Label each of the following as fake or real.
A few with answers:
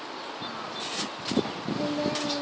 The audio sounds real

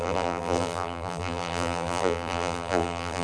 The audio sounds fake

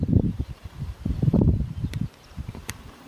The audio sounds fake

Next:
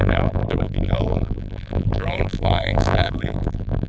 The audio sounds fake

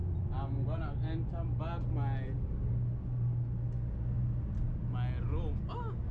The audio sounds real